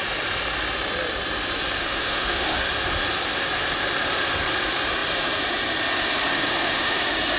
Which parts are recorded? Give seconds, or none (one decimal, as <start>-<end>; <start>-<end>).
0.0-1.8; 2.7-6.3; 7.0-7.4